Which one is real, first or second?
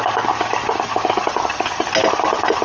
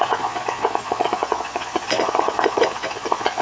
first